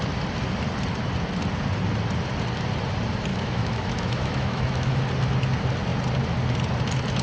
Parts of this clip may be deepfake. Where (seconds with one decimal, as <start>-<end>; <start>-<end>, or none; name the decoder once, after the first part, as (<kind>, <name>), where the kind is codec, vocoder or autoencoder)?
3.3-5.0 (autoencoder, DAC-VAE)